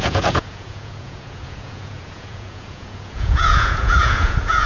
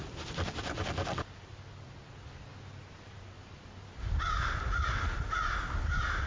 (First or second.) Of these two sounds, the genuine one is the second